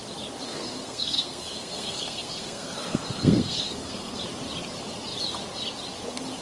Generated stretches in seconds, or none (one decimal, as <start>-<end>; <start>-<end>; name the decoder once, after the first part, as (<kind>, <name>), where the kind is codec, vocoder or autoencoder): 0.5-4.2 (codec, SNAC)